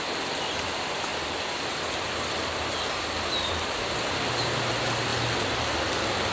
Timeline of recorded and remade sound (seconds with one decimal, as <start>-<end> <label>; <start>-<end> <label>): 0.0-6.3 recorded